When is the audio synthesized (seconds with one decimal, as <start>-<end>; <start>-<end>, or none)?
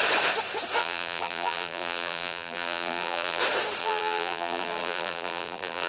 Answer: 0.8-3.4; 3.8-5.9